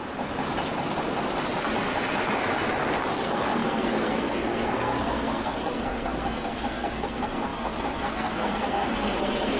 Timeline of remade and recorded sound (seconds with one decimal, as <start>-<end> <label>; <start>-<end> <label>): 0.0-3.1 recorded; 3.1-9.6 remade